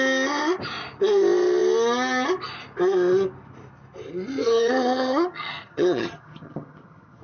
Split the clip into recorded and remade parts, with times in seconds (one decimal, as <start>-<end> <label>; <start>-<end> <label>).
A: 0.0-4.4 recorded; 4.4-7.2 remade